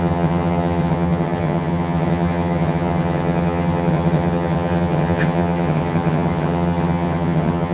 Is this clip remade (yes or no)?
yes